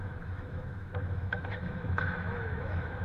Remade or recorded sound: remade